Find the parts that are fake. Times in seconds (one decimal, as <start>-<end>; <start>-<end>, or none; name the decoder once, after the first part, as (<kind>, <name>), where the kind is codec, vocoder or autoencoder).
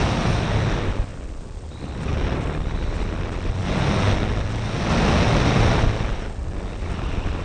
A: 1.1-3.4 (vocoder, BigVGAN v2); 6.4-7.4